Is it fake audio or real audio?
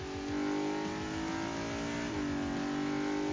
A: real